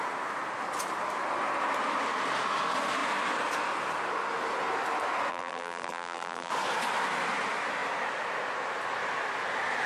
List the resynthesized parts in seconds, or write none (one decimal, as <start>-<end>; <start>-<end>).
5.3-6.5